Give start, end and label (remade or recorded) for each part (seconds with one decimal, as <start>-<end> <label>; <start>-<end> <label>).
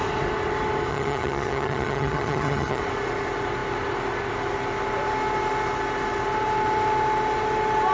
0.0-0.9 recorded; 0.9-2.8 remade; 2.8-7.9 recorded